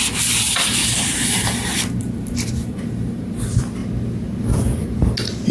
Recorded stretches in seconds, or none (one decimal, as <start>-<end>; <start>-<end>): 0.0-0.8; 3.4-5.5